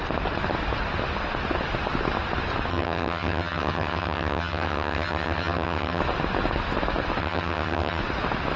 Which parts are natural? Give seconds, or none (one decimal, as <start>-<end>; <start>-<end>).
0.0-2.7; 6.0-7.2; 8.0-8.6